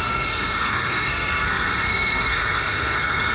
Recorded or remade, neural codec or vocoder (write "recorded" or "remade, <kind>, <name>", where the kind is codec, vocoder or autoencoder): remade, codec, SNAC